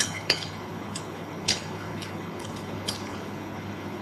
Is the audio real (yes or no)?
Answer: no